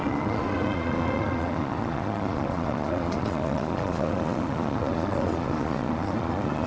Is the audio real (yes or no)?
no